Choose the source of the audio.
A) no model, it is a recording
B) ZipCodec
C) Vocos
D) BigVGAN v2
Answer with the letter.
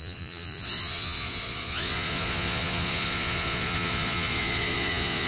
C